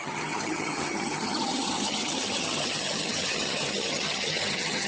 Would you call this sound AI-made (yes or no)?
yes